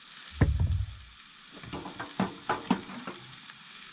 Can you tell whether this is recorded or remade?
recorded